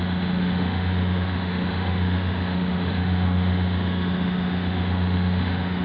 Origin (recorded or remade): remade